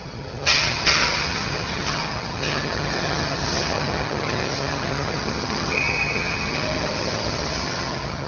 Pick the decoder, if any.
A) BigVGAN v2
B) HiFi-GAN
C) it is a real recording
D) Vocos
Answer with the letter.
B